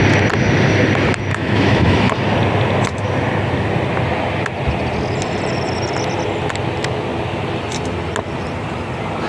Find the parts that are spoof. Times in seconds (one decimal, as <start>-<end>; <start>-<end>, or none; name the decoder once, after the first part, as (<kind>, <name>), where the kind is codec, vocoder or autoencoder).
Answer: 1.3-2.1 (autoencoder, DAC-VAE)